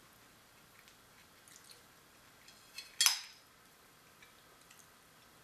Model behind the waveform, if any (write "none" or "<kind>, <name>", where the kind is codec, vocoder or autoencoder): none